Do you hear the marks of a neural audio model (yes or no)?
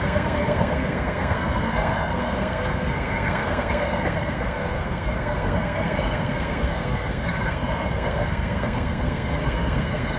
yes